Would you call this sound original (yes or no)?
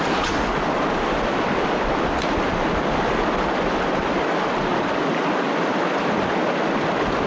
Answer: yes